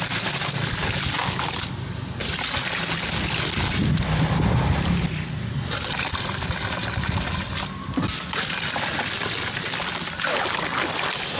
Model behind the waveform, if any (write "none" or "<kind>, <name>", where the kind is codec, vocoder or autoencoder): none